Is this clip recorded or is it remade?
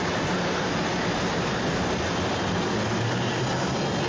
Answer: recorded